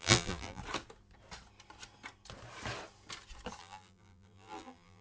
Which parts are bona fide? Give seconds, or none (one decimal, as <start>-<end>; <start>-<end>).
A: 0.6-3.6